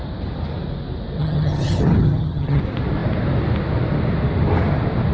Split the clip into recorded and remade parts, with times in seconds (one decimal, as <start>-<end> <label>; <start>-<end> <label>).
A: 0.0-1.2 recorded; 1.2-2.6 remade; 2.6-5.1 recorded